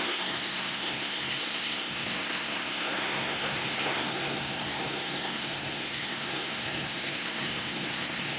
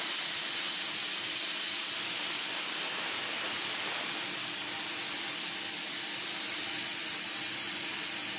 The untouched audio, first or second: second